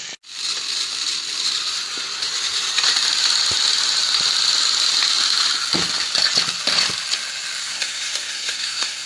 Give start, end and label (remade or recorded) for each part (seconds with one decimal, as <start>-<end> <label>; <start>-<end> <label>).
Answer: 0.0-7.6 recorded; 7.6-9.1 remade